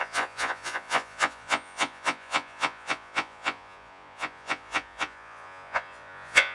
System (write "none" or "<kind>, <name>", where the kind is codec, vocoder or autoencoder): vocoder, Vocos